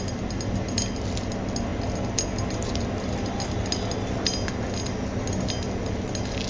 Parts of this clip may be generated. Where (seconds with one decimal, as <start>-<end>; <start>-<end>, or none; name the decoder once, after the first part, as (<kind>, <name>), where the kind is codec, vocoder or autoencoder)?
none